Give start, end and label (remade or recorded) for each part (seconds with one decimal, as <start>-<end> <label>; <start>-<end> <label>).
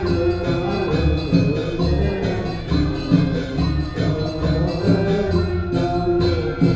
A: 0.0-6.8 recorded